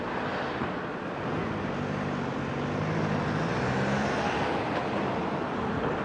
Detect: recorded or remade recorded